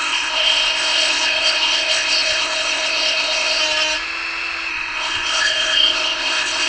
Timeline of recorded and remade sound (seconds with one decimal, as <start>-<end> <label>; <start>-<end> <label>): 0.0-3.6 remade; 3.6-4.7 recorded; 4.7-6.7 remade